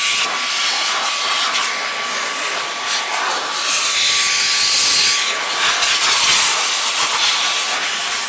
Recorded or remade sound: recorded